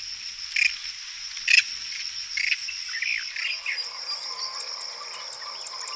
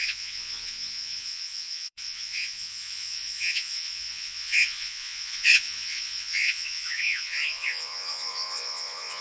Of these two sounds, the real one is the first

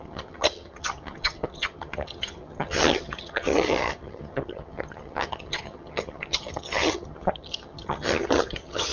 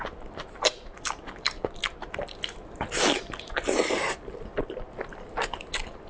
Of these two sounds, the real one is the second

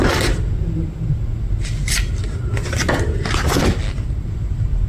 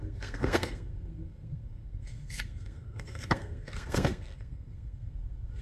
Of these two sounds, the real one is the first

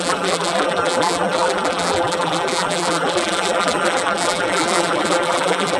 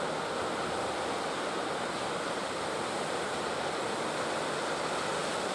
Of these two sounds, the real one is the second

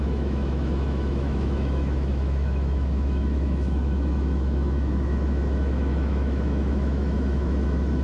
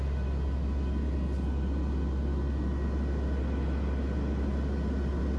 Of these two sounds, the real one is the second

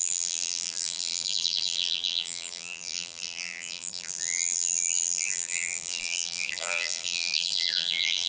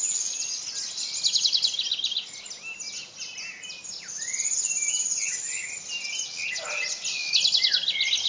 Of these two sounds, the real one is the second